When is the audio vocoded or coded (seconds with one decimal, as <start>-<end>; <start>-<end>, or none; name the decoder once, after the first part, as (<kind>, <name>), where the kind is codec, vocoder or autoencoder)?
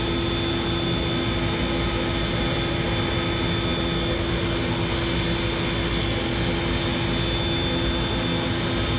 none